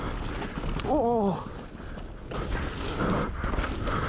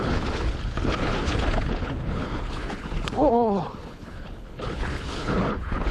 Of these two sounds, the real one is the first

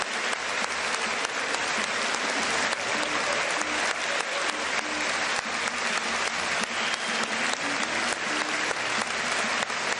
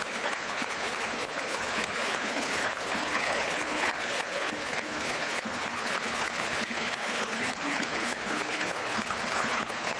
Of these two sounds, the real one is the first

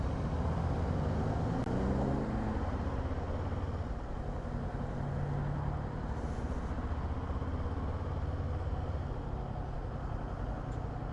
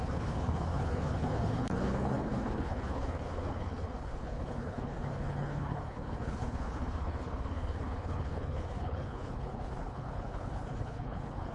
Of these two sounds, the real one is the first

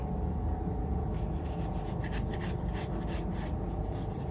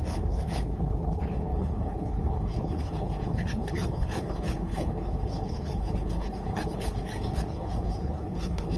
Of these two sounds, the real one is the first